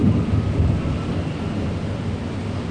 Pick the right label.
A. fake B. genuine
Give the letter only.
B